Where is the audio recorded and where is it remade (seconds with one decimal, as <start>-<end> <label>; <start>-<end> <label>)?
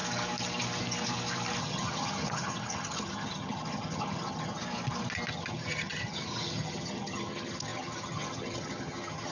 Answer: 0.0-1.6 recorded; 1.6-4.6 remade; 4.6-5.3 recorded; 5.3-9.3 remade